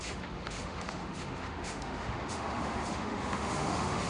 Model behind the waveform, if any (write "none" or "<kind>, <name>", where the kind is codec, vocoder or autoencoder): autoencoder, DAC-VAE